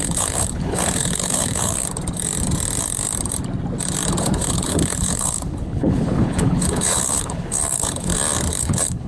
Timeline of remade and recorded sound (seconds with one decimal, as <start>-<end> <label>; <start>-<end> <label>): 0.0-1.8 remade; 1.8-4.2 recorded; 4.2-8.1 remade; 8.1-8.6 recorded; 8.6-9.1 remade